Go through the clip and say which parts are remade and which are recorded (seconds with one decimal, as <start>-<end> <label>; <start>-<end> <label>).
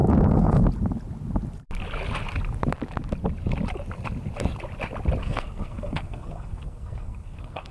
0.0-0.6 remade; 0.6-5.2 recorded; 5.2-7.7 remade